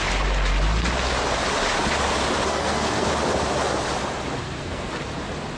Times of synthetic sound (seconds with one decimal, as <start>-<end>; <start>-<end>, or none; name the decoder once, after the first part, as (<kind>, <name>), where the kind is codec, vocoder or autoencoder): 2.5-3.1 (codec, SNAC); 4.4-4.9